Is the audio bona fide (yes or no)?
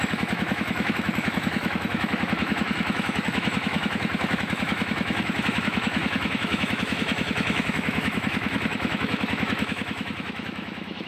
no